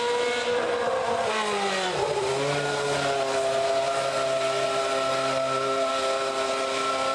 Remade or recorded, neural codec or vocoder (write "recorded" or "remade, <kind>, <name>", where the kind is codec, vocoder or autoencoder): recorded